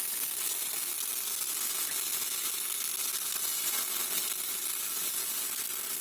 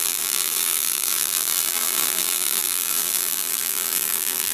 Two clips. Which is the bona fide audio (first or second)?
first